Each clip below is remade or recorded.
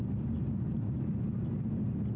recorded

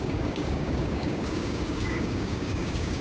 remade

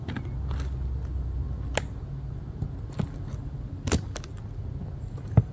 recorded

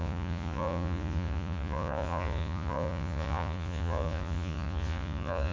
remade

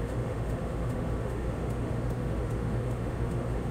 remade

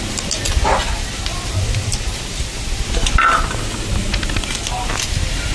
recorded